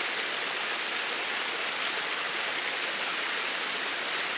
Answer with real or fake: fake